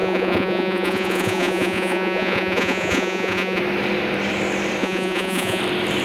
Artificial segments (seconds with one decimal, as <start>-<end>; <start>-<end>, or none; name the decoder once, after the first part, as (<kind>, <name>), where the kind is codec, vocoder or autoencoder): 0.0-3.6 (vocoder, Vocos); 4.8-5.6